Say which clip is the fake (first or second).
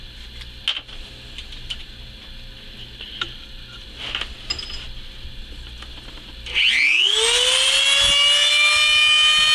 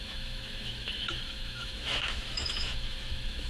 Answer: second